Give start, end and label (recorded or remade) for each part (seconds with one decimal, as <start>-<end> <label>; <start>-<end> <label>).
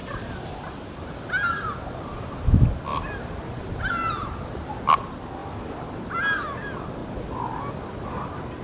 0.0-2.9 recorded; 2.9-4.9 remade; 4.9-5.4 recorded; 5.4-6.2 remade; 6.2-8.6 recorded